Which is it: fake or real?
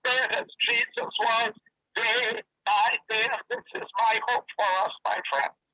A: real